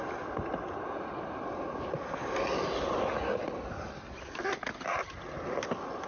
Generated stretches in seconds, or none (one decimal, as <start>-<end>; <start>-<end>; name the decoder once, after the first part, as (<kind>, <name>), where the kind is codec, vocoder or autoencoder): none